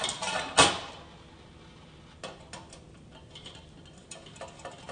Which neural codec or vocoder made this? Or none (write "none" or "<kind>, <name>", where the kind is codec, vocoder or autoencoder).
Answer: none